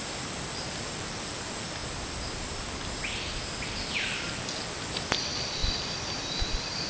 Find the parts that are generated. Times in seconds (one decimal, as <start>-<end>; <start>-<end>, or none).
0.0-1.8; 3.9-6.9